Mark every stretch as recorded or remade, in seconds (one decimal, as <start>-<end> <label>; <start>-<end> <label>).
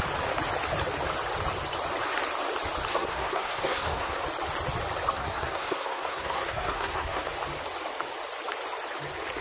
0.0-2.9 recorded; 2.9-4.2 remade; 4.2-5.1 recorded; 5.1-7.3 remade; 7.3-9.4 recorded